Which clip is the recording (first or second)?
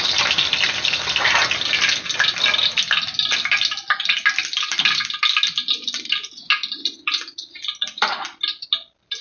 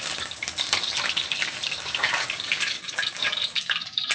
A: first